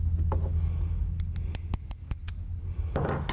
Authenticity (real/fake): real